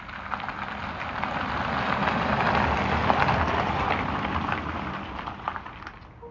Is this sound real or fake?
real